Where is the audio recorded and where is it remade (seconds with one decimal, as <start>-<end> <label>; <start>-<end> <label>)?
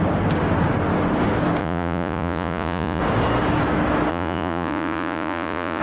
0.0-1.6 recorded; 1.6-3.0 remade; 3.0-4.1 recorded; 4.1-5.8 remade